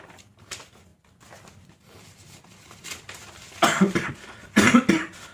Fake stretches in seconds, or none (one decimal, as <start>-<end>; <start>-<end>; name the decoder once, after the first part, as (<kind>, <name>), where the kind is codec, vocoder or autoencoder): none